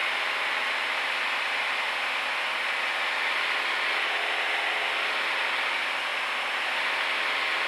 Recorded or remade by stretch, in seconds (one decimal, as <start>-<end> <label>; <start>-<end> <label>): 0.0-7.7 recorded